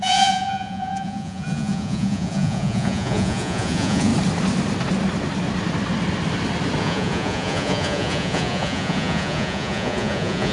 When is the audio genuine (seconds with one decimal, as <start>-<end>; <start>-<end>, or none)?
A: 4.1-6.8